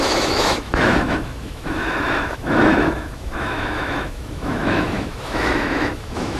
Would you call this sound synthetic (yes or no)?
yes